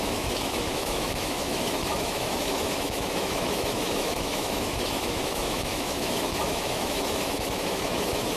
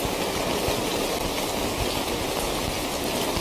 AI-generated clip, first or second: first